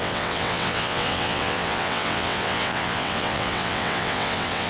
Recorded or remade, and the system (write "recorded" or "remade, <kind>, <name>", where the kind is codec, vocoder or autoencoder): remade, vocoder, WaveNeXt